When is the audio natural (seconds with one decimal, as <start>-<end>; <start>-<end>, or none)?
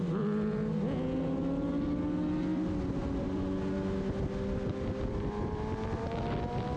0.0-6.8